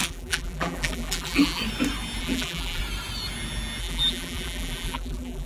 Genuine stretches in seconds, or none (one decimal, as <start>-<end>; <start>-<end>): 1.6-2.2; 2.8-3.8